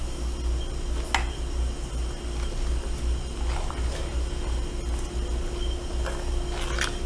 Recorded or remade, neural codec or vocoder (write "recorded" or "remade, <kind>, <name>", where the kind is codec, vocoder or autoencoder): recorded